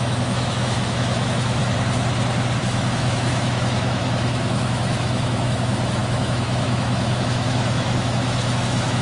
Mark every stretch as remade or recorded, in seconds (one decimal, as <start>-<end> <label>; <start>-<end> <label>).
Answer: 0.0-1.6 remade; 1.6-2.6 recorded; 2.6-9.0 remade